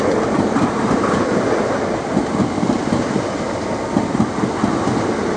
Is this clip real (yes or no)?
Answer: yes